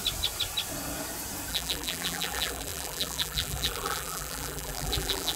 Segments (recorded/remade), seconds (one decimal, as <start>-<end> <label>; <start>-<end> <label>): 0.0-1.5 recorded; 1.5-5.4 remade